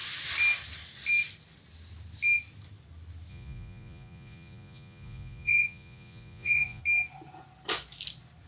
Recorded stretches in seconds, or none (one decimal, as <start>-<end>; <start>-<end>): 0.0-3.3; 6.8-8.5